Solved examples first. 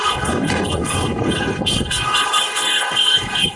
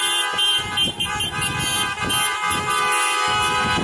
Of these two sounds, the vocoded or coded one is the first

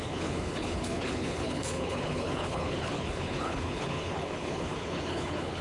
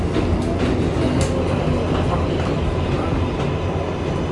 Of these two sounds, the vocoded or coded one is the first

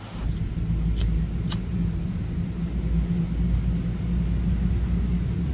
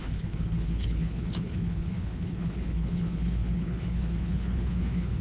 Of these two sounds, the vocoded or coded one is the second